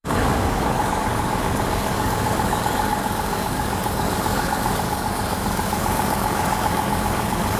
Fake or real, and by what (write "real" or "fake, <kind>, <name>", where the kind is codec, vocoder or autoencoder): fake, codec, DAC